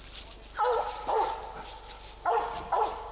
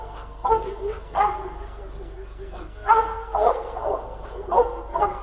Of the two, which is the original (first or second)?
first